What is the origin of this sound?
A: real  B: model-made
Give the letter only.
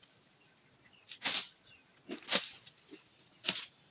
A